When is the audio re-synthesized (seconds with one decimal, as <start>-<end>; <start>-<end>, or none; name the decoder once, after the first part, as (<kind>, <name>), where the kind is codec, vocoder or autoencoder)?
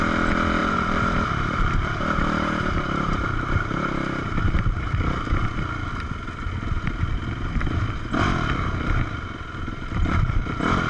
0.6-4.5 (vocoder, BigVGAN v2)